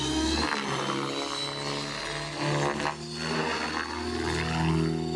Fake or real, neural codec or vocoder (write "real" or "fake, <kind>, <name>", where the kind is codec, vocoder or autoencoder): real